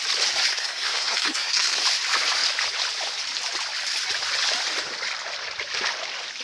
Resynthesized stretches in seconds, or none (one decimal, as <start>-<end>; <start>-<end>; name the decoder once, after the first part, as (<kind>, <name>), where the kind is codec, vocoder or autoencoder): 0.5-1.8 (codec, SNAC)